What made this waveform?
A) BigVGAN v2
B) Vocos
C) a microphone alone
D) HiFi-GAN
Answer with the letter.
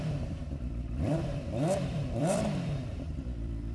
A